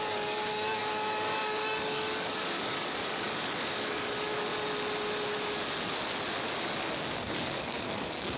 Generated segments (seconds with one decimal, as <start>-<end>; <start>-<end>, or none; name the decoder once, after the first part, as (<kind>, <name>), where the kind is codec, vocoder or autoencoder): 0.0-4.5 (codec, DAC); 7.1-8.4